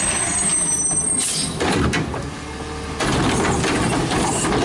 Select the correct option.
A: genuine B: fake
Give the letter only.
A